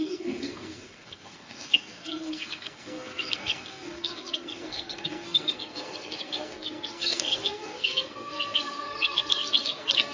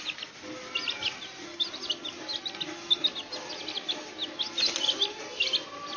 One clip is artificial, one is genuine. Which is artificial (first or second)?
first